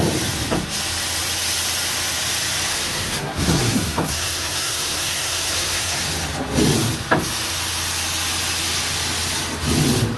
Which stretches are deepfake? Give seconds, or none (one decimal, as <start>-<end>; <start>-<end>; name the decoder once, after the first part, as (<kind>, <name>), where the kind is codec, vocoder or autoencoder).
2.7-6.0 (codec, SNAC)